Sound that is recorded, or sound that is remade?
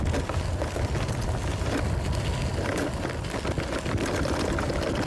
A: recorded